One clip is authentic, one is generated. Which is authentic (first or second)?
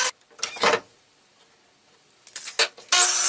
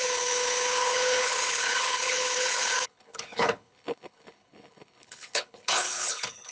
first